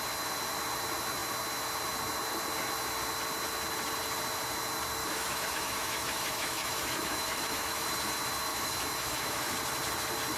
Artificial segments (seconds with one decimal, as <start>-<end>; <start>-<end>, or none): 5.0-8.0; 8.5-9.5

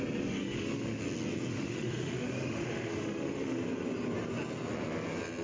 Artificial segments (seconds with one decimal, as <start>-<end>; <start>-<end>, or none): 0.4-1.0; 1.5-3.6

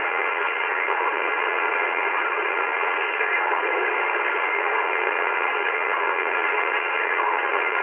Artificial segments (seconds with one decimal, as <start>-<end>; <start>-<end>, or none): 0.0-3.8; 4.3-7.8